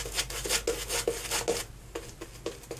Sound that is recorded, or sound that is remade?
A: recorded